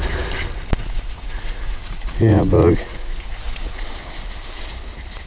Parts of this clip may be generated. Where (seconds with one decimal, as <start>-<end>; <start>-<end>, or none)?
0.8-3.9